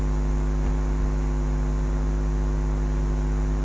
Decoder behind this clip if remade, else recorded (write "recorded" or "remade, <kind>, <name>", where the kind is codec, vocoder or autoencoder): recorded